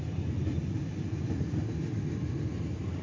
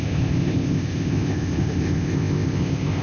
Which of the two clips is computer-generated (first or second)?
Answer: second